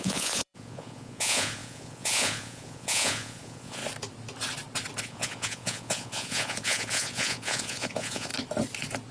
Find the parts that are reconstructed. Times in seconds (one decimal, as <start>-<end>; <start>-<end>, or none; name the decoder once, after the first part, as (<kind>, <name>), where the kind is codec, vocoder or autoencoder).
0.0-3.8 (vocoder, Vocos); 5.0-8.3